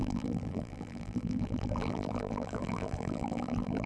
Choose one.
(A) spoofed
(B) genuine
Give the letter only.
A